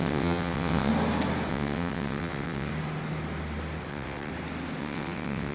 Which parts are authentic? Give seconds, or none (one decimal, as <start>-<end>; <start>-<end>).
0.9-1.5; 2.7-3.9; 4.3-4.8